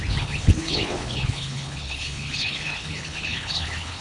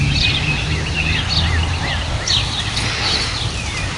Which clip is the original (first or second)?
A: second